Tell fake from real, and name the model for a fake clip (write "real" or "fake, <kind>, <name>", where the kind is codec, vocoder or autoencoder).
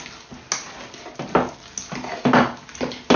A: real